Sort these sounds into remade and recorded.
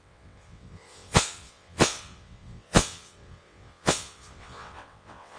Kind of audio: remade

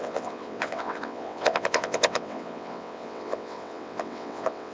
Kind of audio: remade